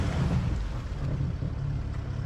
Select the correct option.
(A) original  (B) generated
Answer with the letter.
A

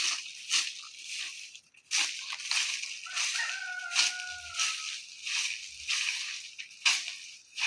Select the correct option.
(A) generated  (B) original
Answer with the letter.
B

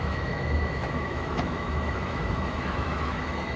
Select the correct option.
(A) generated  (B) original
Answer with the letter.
A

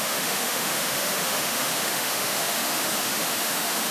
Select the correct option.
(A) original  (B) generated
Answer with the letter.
B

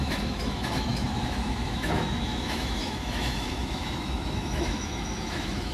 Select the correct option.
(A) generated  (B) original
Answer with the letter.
A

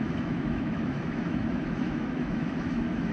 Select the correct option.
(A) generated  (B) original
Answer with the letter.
A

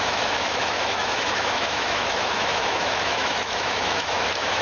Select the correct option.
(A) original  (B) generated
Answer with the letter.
B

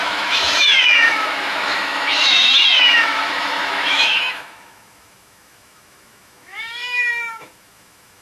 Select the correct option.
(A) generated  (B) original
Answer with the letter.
A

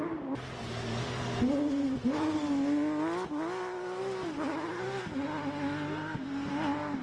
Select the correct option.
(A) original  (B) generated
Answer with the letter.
A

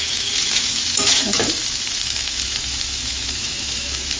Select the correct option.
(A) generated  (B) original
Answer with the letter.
A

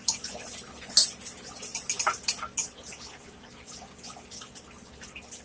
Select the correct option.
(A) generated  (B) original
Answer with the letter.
B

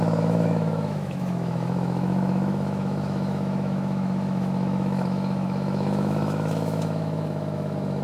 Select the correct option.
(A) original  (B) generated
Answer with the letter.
B